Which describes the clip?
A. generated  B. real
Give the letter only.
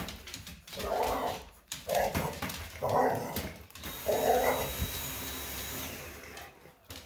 A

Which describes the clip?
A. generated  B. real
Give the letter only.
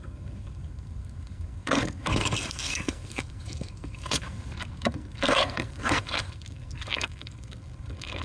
A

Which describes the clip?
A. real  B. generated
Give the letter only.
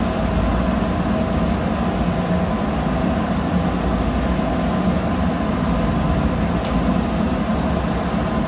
A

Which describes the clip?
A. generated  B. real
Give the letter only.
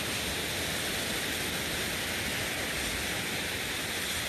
B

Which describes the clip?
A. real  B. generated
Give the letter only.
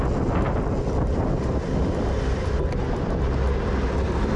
A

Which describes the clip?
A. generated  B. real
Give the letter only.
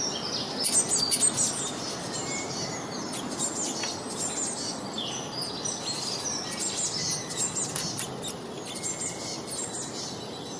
B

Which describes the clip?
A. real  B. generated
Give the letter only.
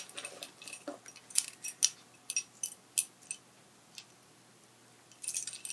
A